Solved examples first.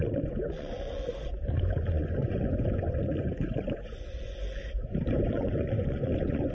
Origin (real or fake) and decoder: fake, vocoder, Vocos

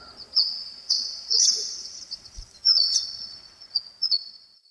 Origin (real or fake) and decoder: fake, vocoder, Vocos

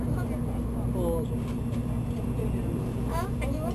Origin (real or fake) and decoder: real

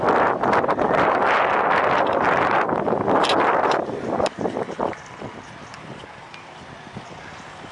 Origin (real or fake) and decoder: real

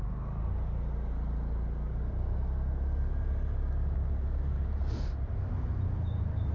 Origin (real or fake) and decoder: real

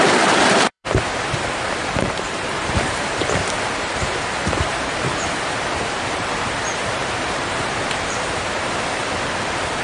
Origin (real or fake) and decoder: fake, vocoder, BigVGAN v2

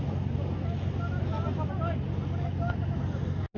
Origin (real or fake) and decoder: real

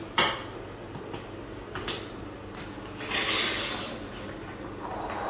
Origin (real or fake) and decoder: real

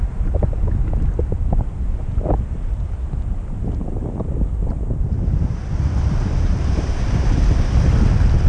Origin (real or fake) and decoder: fake, vocoder, BigVGAN v2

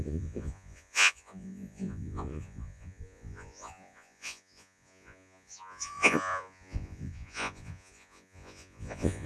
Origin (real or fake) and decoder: fake, vocoder, Vocos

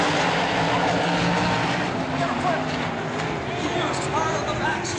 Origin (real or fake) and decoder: real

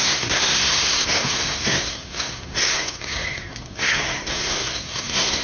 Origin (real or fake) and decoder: fake, codec, SNAC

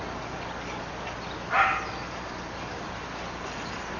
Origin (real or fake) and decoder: real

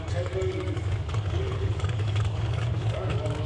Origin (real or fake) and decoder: fake, codec, DAC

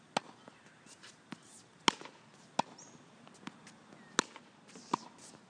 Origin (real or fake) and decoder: real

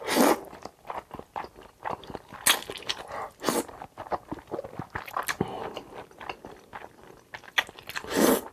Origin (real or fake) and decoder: real